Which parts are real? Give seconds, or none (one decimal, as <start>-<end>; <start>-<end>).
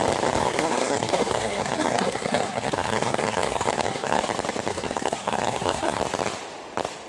0.0-0.4; 4.2-4.7; 6.0-7.1